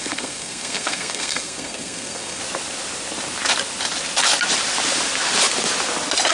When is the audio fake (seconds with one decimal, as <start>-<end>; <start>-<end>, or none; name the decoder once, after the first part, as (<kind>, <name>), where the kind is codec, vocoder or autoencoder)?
0.0-2.4 (codec, SNAC)